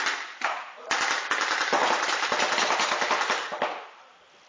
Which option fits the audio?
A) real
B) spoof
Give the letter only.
A